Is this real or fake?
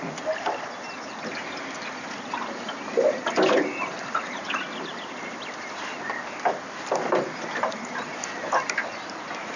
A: real